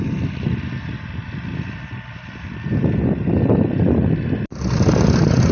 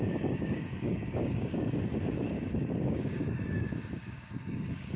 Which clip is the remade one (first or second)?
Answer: second